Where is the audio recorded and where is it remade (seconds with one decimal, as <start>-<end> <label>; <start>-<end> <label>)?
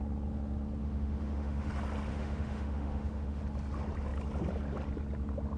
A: 0.0-0.8 recorded; 0.8-1.7 remade; 1.7-2.1 recorded; 2.1-3.4 remade; 3.4-5.6 recorded